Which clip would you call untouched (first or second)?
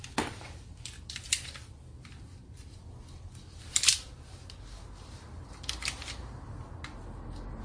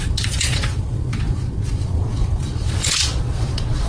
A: first